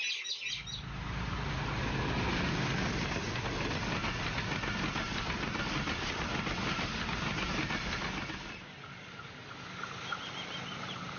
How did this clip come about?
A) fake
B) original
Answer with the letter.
B